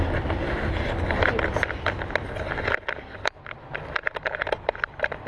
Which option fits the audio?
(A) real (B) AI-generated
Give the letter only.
A